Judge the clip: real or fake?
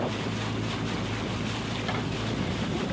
real